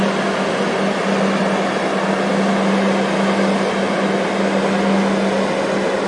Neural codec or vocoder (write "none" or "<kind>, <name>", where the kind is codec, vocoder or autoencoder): none